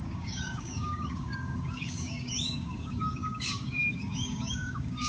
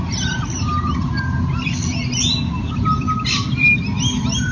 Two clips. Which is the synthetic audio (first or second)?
first